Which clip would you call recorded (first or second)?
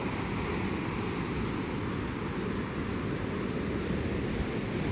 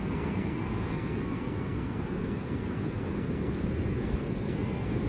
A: first